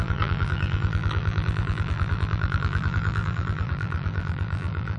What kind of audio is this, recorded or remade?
remade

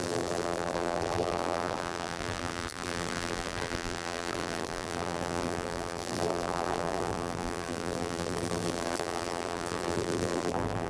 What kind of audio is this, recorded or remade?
remade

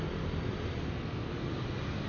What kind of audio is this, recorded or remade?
recorded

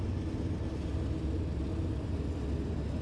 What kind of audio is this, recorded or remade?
recorded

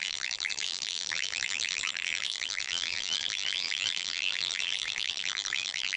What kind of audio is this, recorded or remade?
remade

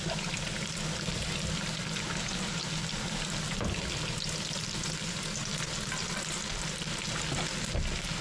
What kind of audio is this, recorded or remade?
recorded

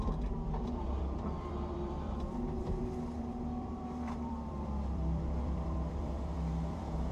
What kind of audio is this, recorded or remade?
remade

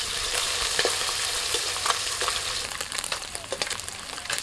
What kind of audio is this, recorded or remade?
remade